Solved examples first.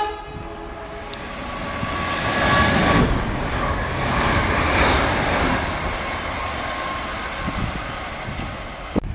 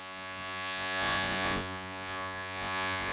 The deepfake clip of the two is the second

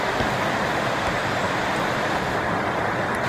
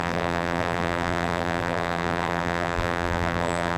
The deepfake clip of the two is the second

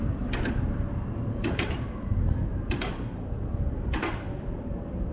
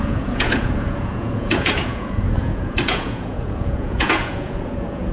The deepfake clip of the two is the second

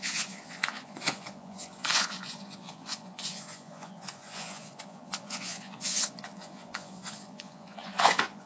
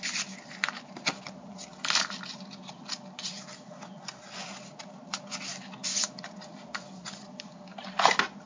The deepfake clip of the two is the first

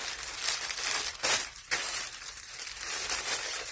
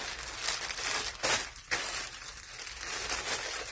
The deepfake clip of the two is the first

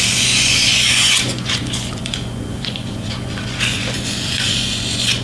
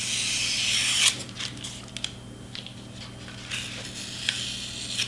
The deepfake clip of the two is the first